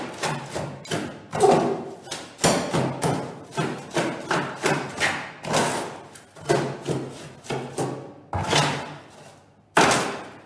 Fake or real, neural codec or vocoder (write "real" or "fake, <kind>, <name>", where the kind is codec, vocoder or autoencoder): real